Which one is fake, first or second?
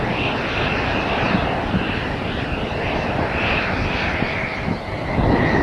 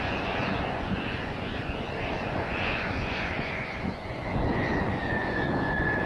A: second